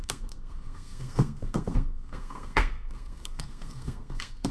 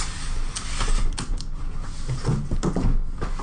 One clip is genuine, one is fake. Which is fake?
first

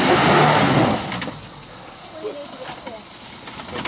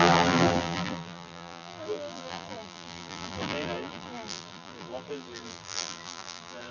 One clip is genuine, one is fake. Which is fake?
second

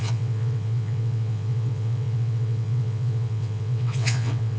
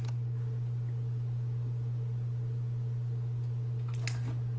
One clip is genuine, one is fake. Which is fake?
first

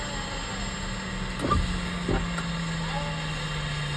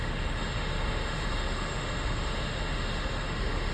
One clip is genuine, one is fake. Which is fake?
second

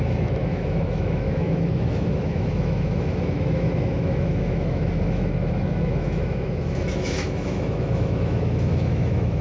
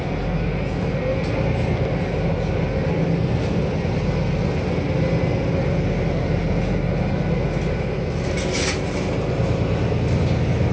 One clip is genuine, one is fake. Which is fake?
first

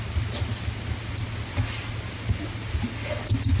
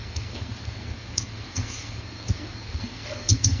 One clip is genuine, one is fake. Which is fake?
second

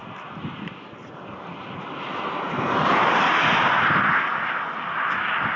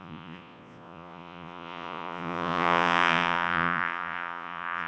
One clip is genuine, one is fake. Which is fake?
second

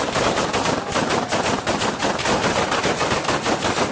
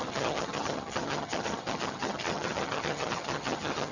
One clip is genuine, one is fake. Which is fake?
second